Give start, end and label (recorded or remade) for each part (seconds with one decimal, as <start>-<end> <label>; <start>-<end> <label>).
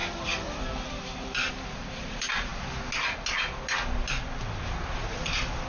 0.0-2.5 remade; 2.5-4.2 recorded; 4.2-5.7 remade